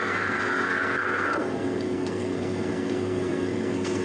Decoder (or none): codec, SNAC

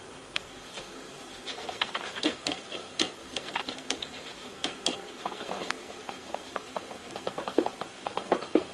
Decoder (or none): codec, SNAC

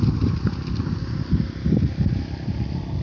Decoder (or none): none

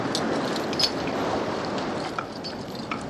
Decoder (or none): none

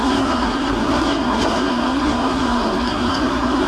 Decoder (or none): codec, SNAC